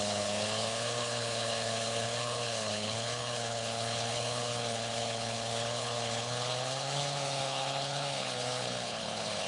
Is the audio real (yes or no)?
no